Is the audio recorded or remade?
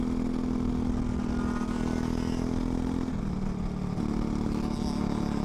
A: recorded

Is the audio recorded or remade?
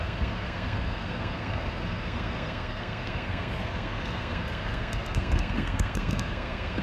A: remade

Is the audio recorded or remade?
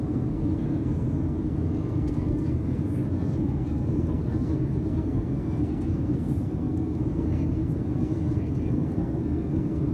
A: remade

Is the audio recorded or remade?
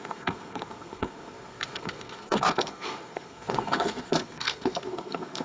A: remade